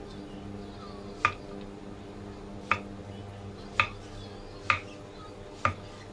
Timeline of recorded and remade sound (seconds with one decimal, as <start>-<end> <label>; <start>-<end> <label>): 0.0-6.1 recorded